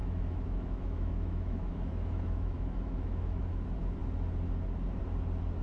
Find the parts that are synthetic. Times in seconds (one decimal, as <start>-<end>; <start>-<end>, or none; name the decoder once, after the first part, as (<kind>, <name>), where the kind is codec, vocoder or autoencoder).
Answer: 0.0-3.4 (autoencoder, DAC-VAE)